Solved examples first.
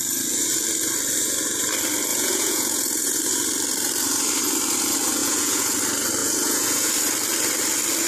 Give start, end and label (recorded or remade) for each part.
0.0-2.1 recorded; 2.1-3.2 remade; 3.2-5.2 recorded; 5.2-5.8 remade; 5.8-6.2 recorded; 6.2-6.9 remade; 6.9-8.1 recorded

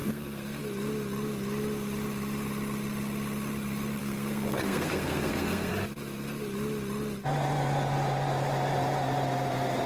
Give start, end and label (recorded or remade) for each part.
0.0-0.6 remade; 0.6-4.0 recorded; 4.0-5.7 remade; 5.7-9.9 recorded

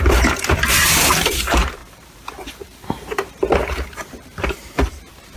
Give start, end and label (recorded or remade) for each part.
0.0-5.4 remade

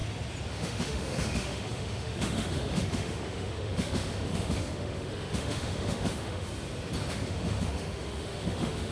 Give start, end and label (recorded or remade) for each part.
0.0-0.5 recorded; 0.5-6.5 remade; 6.5-7.1 recorded; 7.1-8.9 remade